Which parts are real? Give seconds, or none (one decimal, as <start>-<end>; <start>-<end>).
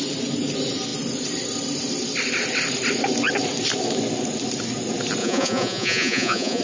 0.0-5.2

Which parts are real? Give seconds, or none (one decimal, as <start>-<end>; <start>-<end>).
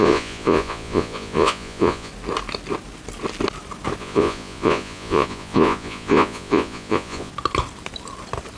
2.1-4.0; 7.3-8.6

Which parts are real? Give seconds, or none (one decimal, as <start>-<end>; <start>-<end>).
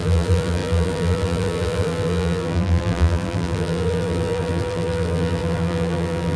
none